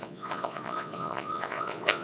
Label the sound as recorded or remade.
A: remade